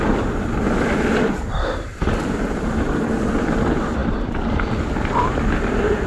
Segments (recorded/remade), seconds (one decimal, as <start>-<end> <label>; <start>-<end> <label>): 0.0-6.1 remade